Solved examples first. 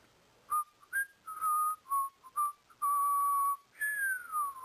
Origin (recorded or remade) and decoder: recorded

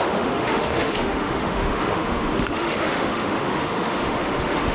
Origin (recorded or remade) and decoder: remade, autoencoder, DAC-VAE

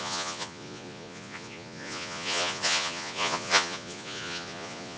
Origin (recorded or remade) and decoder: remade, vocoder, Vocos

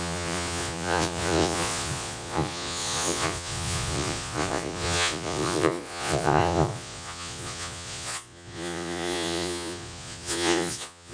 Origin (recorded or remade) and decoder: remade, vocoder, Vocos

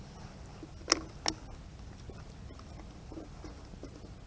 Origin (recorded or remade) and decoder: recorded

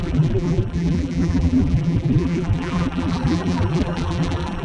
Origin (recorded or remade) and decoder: remade, vocoder, BigVGAN v2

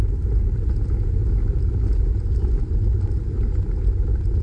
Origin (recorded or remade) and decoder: recorded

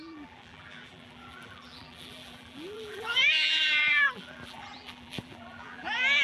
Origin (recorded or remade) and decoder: remade, vocoder, BigVGAN v2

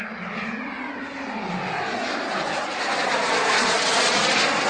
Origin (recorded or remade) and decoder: recorded